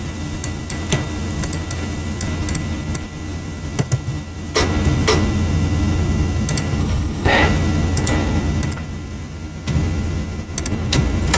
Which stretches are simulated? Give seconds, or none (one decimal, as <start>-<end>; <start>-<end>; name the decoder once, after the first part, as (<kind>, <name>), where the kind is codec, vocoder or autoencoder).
6.8-7.3 (codec, HILCodec)